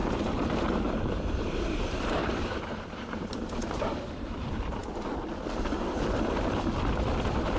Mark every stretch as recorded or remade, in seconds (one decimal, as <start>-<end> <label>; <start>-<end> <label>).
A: 0.0-4.8 remade; 4.8-7.6 recorded